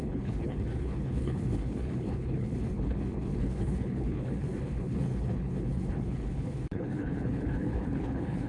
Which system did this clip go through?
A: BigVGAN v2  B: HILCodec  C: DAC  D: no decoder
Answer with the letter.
B